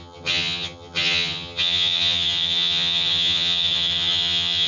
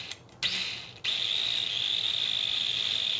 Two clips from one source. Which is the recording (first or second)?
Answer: second